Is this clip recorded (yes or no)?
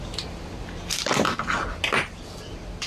yes